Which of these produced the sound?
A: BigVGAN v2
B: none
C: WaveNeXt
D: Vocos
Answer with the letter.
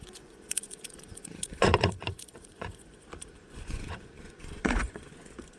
D